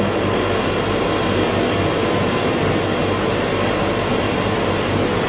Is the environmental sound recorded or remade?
recorded